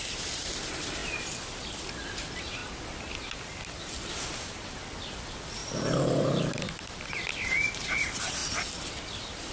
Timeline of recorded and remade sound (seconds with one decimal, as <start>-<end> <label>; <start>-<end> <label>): 0.0-1.0 remade; 1.0-2.1 recorded; 2.1-2.6 remade; 2.6-4.1 recorded; 4.1-5.6 remade; 5.6-6.8 recorded; 6.8-8.4 remade; 8.4-9.5 recorded